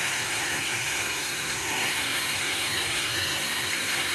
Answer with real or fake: fake